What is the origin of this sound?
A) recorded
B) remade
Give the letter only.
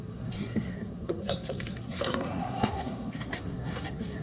B